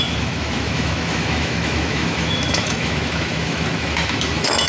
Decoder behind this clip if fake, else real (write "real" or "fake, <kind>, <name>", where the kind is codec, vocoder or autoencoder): fake, autoencoder, DAC-VAE